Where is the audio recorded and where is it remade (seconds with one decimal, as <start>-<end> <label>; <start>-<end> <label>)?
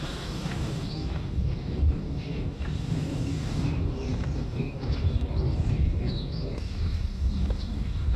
0.0-8.2 remade